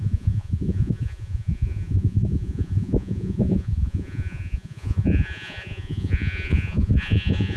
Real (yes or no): no